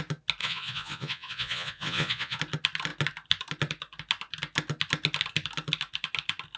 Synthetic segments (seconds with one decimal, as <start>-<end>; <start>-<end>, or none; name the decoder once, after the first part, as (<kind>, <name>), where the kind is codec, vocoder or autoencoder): 0.4-2.4 (vocoder, Vocos)